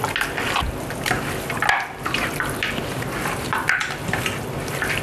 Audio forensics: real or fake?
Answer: real